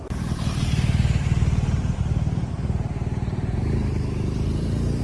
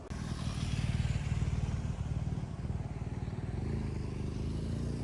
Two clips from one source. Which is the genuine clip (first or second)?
second